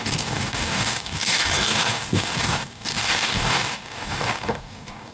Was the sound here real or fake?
fake